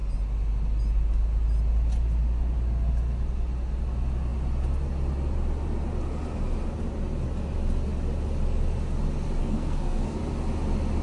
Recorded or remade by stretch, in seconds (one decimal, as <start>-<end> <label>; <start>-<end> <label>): 0.0-9.4 recorded; 9.4-10.2 remade; 10.2-11.0 recorded